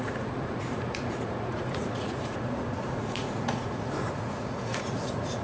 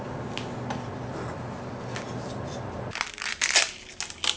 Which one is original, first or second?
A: second